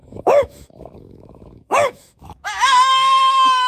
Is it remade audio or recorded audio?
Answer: remade